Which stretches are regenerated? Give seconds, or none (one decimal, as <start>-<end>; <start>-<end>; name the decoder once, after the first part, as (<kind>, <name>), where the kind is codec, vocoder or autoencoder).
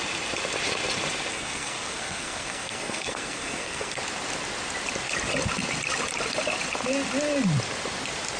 1.3-4.0 (codec, SNAC)